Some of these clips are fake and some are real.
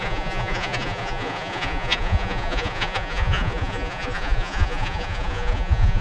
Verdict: fake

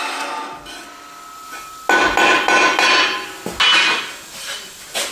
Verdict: real